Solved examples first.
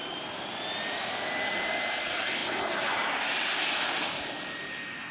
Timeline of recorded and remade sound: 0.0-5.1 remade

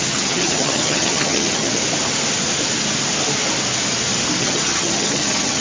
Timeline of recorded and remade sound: 0.0-1.8 remade; 1.8-4.4 recorded; 4.4-5.6 remade

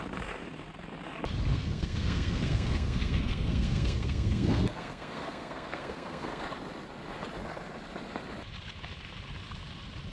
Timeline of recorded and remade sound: 0.0-1.5 recorded; 1.5-6.4 remade; 6.4-10.1 recorded

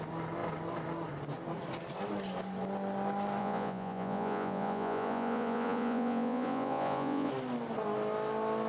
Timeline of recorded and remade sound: 0.0-3.4 recorded; 3.4-7.3 remade; 7.3-8.7 recorded

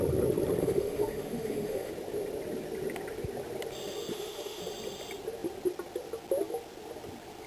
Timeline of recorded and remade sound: 0.0-0.6 recorded; 0.6-1.9 remade; 1.9-4.1 recorded; 4.1-4.6 remade; 4.6-7.5 recorded

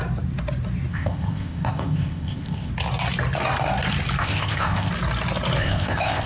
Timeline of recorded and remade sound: 0.0-0.9 recorded; 0.9-2.7 remade; 2.7-4.2 recorded; 4.2-4.9 remade; 4.9-5.6 recorded; 5.6-6.3 remade

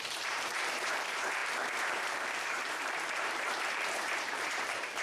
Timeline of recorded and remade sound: 0.0-5.0 remade

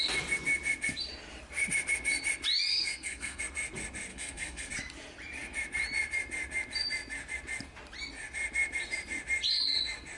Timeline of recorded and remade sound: 0.0-2.7 recorded; 2.7-3.4 remade; 3.4-4.1 recorded; 4.1-4.7 remade; 4.7-10.2 recorded